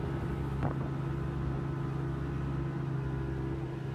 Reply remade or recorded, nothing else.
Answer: recorded